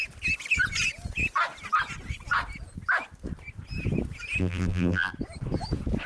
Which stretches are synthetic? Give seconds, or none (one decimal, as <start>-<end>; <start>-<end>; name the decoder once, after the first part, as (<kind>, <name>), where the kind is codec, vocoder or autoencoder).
4.4-5.1 (vocoder, BigVGAN v2)